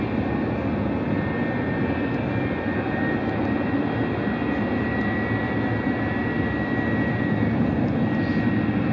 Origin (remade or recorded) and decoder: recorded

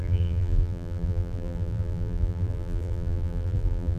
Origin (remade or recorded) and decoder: remade, vocoder, BigVGAN v2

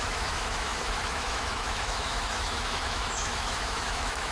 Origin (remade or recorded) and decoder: remade, autoencoder, DAC-VAE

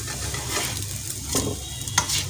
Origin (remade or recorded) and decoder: recorded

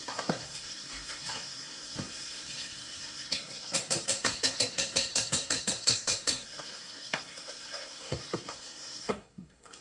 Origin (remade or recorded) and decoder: remade, codec, SNAC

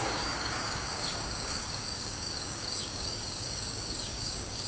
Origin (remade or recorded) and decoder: remade, codec, DAC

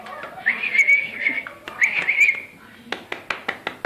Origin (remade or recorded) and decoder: recorded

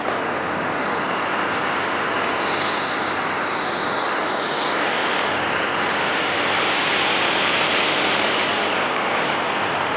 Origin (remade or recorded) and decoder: recorded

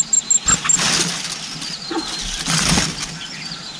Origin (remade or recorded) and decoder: recorded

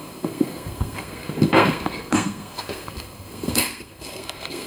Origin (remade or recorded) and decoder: remade, codec, SNAC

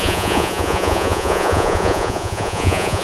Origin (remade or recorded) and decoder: remade, vocoder, Vocos